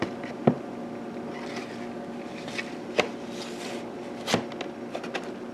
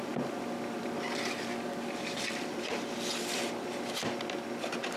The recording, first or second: first